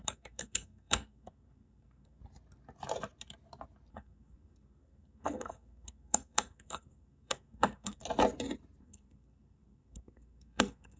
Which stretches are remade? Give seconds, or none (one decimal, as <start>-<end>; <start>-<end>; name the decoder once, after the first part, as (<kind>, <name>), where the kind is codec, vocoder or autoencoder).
0.0-2.2 (codec, SNAC); 3.9-8.0; 8.8-11.0